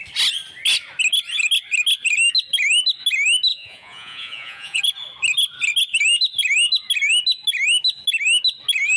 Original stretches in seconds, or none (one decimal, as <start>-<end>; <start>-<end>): 0.0-3.5; 4.8-9.0